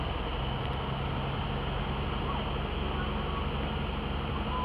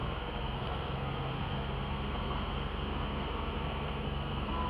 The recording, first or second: first